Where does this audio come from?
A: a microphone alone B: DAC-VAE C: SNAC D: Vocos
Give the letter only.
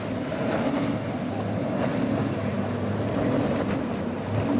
A